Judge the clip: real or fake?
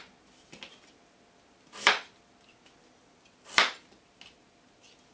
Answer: real